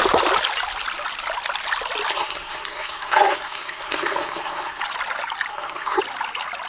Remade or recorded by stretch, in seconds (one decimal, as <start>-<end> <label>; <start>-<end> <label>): 0.0-2.1 recorded; 2.1-4.8 remade; 4.8-5.5 recorded; 5.5-6.0 remade; 6.0-6.7 recorded